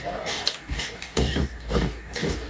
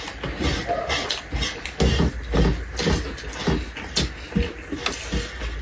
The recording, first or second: second